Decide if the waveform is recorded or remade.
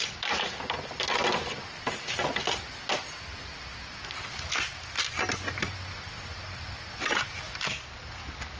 recorded